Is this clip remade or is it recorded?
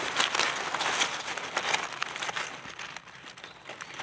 recorded